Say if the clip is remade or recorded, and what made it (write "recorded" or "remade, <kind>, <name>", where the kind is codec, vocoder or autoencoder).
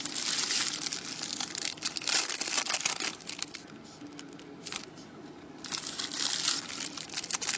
recorded